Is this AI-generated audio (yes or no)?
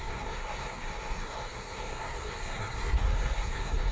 yes